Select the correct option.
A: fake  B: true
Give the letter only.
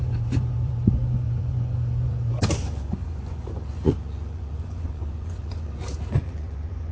A